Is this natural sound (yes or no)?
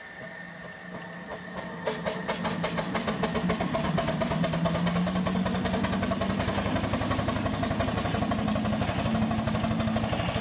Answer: yes